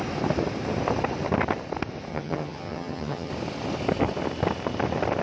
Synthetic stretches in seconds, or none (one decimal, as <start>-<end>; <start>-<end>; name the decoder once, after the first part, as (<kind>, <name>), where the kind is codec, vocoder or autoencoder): 2.1-3.3 (vocoder, HiFi-GAN)